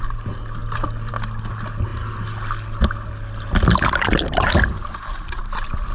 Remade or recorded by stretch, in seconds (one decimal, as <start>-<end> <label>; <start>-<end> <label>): 0.0-5.9 recorded